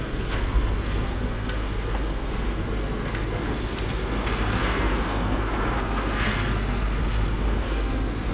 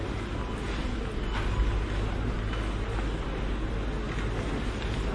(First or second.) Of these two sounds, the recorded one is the second